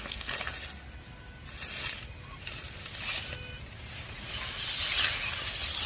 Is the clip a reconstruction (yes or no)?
no